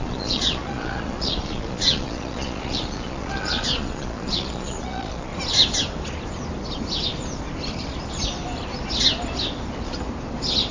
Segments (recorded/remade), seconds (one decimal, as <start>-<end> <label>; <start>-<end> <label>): 0.0-5.3 remade; 5.3-10.7 recorded